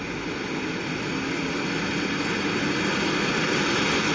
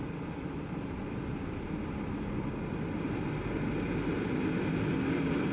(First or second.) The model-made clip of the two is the first